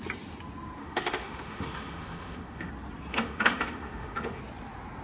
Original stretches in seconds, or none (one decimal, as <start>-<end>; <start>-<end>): 0.0-0.8; 2.7-3.1; 4.4-5.0